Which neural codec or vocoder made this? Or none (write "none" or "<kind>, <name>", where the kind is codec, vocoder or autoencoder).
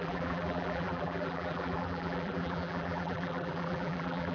vocoder, BigVGAN v2